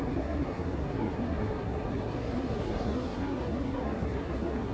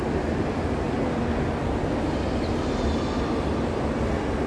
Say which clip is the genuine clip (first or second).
second